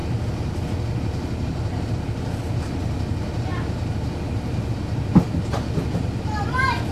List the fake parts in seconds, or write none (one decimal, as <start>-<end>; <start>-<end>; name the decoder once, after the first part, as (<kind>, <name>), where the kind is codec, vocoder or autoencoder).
none